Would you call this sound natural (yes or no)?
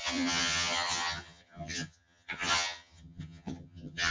no